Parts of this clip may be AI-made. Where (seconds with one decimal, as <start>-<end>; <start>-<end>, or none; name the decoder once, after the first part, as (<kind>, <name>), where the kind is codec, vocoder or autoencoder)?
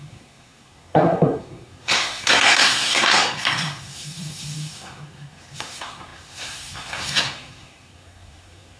0.0-8.8 (codec, SNAC)